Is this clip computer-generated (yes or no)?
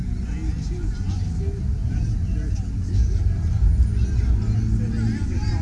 no